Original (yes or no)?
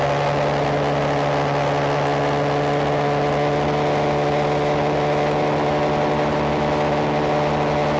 yes